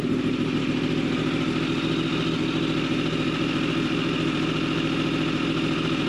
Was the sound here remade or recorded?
recorded